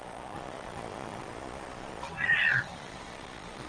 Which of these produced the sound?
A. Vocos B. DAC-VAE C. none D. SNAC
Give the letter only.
A